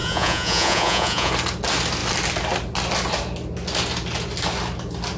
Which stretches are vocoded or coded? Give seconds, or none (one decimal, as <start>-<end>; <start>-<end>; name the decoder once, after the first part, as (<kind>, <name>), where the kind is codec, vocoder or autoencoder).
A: 0.0-1.3 (vocoder, Vocos)